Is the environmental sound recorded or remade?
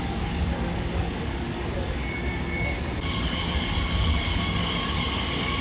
remade